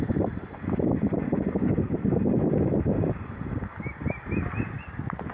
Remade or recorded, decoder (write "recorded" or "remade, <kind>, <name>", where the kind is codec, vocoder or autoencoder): recorded